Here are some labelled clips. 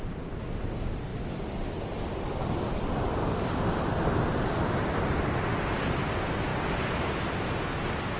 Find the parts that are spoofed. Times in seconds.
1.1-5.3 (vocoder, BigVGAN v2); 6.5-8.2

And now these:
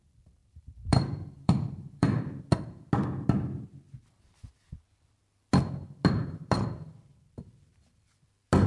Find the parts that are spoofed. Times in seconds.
0.4-2.4 (vocoder, BigVGAN v2)